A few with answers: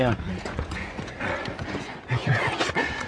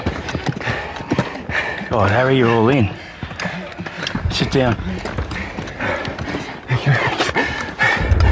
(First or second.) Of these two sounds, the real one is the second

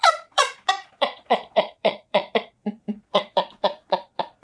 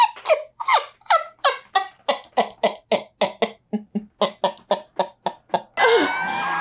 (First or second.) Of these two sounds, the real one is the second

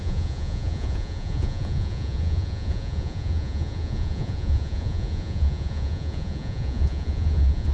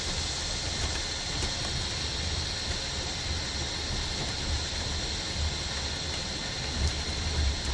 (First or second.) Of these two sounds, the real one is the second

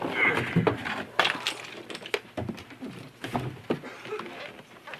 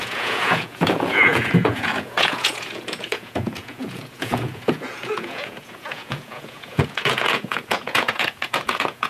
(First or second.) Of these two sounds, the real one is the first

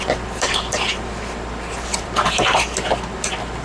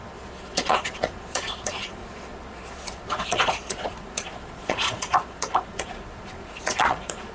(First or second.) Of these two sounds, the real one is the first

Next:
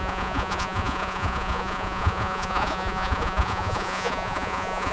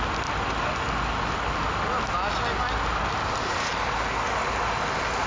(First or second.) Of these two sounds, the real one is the second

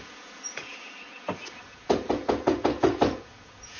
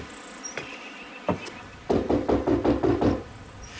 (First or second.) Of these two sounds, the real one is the second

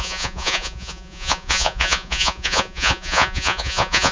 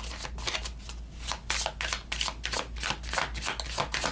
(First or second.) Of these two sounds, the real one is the second